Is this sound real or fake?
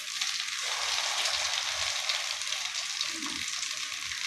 real